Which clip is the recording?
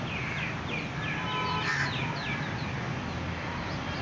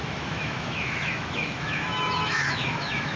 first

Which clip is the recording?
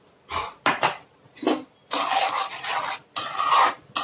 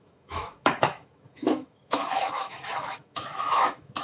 first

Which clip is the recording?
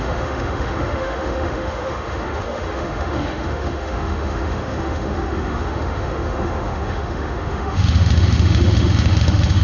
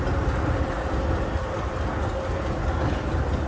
second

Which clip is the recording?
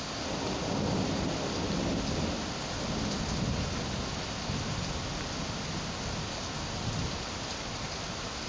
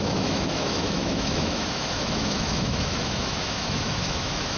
first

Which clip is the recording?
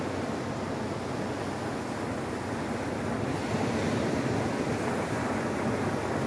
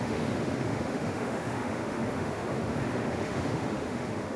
first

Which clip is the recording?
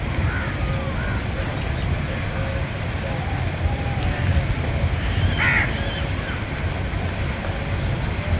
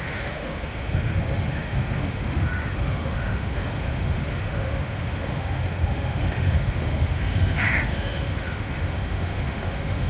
first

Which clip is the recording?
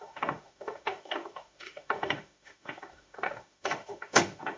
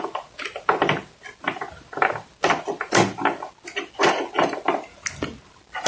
second